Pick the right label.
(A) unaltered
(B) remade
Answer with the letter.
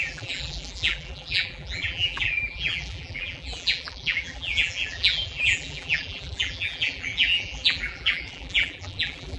B